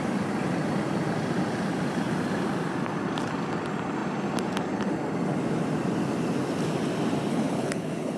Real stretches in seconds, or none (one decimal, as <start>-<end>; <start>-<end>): 0.0-7.3